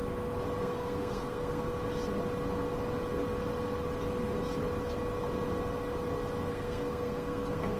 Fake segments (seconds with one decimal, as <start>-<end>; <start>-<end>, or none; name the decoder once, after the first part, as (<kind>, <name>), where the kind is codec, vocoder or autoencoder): 0.6-1.8 (codec, SNAC); 6.5-7.8